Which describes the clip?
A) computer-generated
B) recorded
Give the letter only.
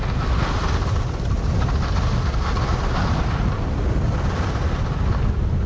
B